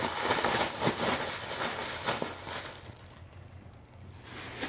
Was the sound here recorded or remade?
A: recorded